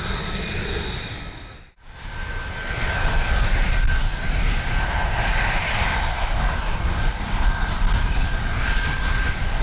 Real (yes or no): yes